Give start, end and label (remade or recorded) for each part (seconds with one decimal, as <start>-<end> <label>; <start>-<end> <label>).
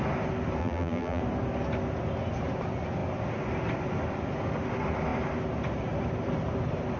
0.0-0.6 recorded; 0.6-1.2 remade; 1.2-7.0 recorded